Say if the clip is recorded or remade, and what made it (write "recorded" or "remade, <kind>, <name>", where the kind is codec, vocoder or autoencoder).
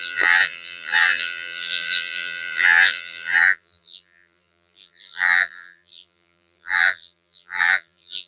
remade, vocoder, BigVGAN v2